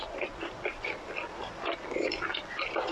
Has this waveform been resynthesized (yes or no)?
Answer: no